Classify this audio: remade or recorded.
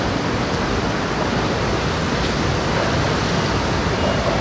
recorded